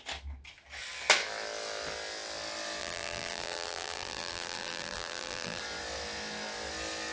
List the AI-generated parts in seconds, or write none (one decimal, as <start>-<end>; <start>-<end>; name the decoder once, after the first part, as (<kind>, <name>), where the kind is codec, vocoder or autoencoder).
2.8-5.6 (vocoder, BigVGAN v2)